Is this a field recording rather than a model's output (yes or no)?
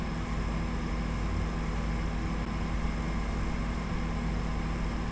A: yes